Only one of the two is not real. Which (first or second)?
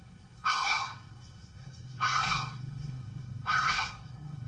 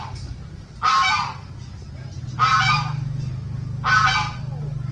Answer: first